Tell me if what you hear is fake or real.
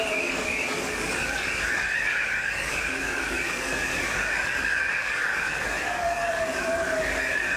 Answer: fake